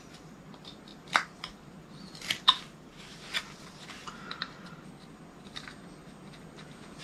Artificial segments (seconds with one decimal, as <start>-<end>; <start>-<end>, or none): 0.9-5.1